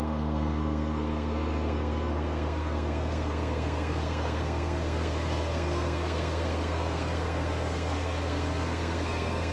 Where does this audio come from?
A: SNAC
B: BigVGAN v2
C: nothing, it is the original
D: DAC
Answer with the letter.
A